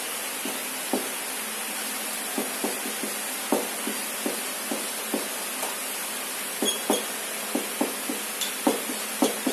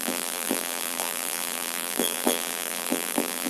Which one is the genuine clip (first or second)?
first